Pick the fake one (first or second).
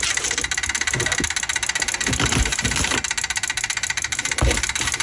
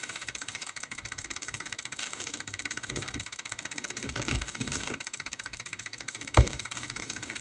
second